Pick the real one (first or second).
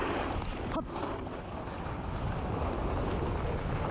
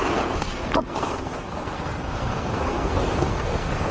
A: first